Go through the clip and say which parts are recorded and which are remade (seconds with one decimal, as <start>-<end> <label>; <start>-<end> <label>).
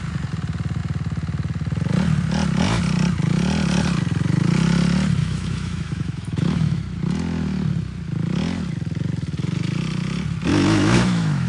0.0-5.2 recorded; 5.2-6.8 remade; 6.8-10.5 recorded; 10.5-11.5 remade